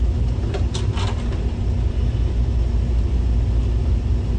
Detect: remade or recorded recorded